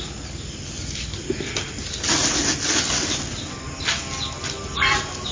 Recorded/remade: recorded